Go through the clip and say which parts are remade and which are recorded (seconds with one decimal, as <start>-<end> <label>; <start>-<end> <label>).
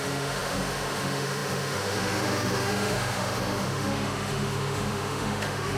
0.0-5.8 remade